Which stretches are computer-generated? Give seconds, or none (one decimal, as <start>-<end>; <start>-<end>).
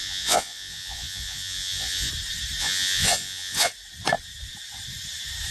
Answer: 0.0-2.1; 2.6-3.7